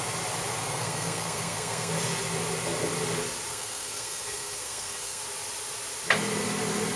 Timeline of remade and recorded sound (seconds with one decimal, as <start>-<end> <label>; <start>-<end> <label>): 0.0-0.6 recorded; 0.6-1.9 remade; 1.9-3.5 recorded; 3.5-5.2 remade; 5.2-7.0 recorded